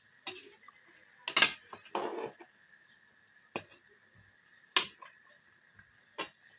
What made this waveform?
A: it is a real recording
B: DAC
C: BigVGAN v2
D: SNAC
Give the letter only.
A